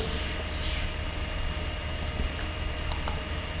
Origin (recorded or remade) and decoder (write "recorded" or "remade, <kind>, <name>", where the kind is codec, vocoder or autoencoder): remade, vocoder, BigVGAN v2